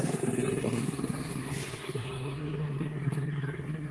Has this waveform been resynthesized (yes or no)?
yes